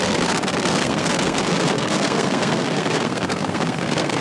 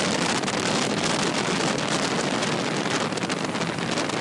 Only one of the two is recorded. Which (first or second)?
second